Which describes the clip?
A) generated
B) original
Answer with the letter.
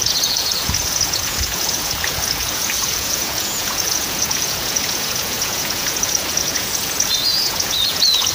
A